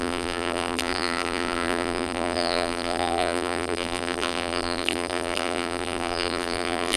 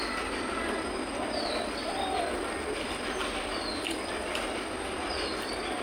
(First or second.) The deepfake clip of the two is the first